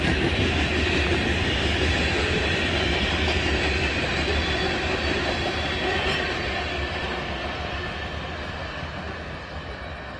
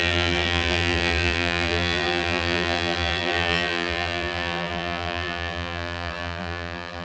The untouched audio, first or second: first